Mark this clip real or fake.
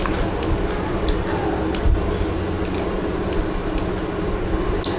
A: real